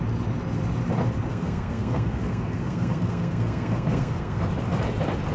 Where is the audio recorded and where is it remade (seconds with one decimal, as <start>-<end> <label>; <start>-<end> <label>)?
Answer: 0.0-1.3 recorded; 1.3-4.4 remade; 4.4-5.3 recorded